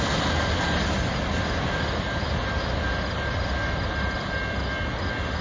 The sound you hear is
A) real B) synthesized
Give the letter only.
A